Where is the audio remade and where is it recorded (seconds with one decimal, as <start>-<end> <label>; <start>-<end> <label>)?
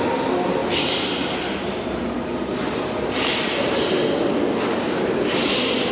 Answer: 0.0-0.6 recorded; 0.6-4.1 remade; 4.1-4.7 recorded; 4.7-5.2 remade; 5.2-5.9 recorded